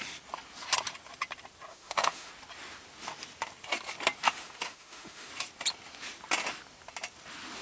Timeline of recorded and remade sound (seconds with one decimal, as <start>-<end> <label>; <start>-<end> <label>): 0.0-1.7 recorded; 1.7-2.3 remade; 2.3-4.3 recorded; 4.3-5.3 remade; 5.3-7.6 recorded